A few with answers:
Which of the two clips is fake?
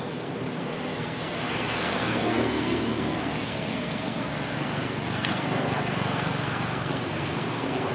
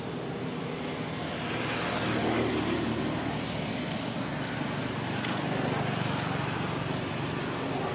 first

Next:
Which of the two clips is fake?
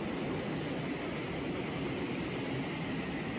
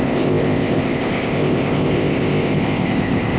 second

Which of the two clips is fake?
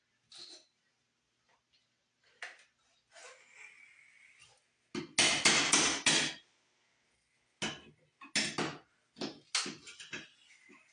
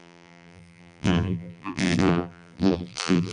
second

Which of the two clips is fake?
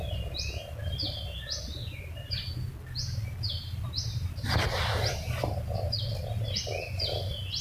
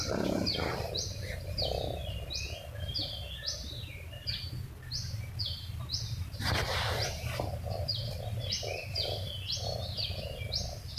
second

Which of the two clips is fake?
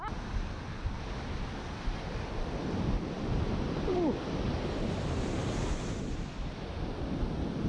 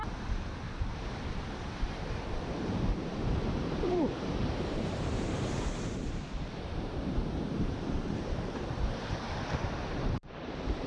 second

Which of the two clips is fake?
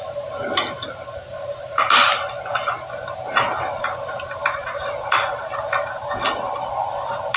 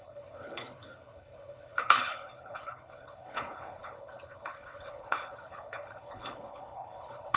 second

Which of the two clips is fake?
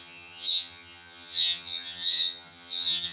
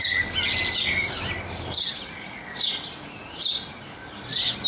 first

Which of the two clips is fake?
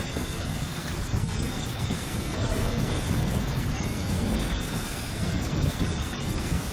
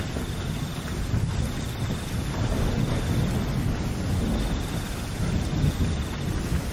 first